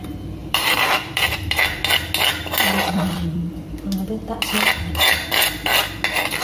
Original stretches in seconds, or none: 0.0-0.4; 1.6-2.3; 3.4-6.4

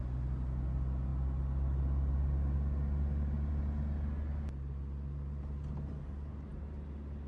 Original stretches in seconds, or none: 0.0-7.3

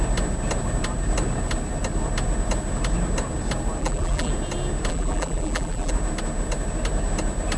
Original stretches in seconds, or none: 0.0-3.8; 4.3-4.9; 5.9-7.6

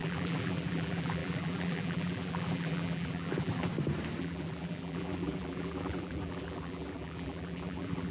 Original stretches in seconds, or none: 3.7-4.2